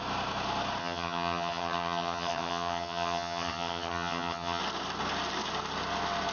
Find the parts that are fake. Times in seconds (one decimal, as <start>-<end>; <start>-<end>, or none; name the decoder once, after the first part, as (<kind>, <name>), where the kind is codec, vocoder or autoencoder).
0.8-4.6 (vocoder, HiFi-GAN)